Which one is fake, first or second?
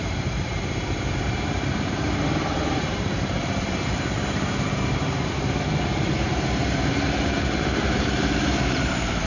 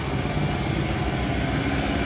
first